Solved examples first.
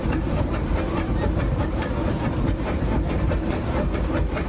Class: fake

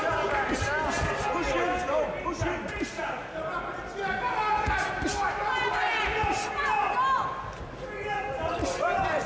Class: real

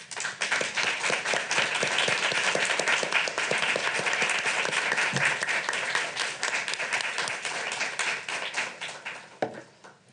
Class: real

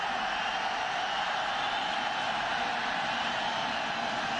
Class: fake